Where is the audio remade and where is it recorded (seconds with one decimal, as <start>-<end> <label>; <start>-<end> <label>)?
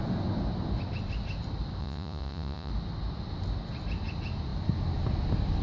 0.0-1.8 recorded; 1.8-2.7 remade; 2.7-5.6 recorded